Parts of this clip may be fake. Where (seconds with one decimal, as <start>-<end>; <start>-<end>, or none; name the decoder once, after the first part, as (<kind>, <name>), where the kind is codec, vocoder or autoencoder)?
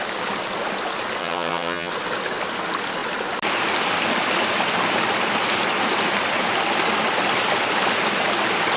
1.2-1.9 (vocoder, HiFi-GAN)